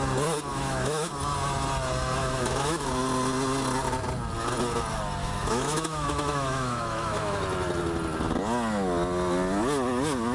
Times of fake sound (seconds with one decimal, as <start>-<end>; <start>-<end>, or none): 0.5-1.1; 2.2-2.9; 5.2-7.4